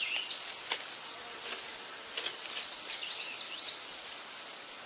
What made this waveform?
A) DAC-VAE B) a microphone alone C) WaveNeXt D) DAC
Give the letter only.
B